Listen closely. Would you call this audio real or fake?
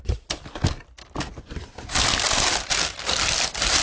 real